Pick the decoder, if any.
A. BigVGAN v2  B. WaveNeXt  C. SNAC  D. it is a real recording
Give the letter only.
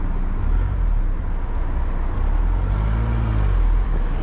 D